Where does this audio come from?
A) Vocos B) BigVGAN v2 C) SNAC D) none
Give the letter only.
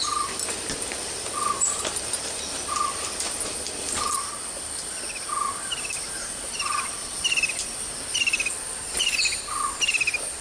D